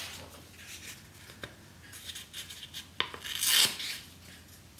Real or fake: real